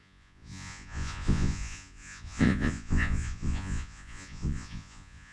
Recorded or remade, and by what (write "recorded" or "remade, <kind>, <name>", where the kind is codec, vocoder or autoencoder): remade, vocoder, Vocos